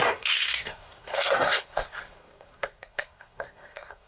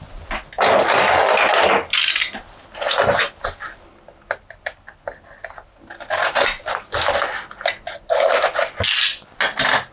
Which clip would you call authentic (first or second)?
second